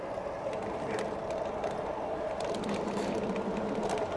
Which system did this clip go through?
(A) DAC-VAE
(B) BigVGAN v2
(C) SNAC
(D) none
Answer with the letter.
D